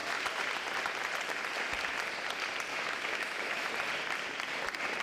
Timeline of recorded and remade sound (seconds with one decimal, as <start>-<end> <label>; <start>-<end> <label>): 0.0-2.7 recorded; 2.7-3.7 remade; 3.7-5.0 recorded